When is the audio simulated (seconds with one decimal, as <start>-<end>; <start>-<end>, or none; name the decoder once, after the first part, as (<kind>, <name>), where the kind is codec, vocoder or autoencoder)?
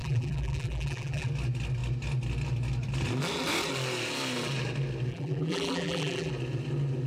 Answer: 0.0-1.3 (vocoder, BigVGAN v2); 5.1-6.3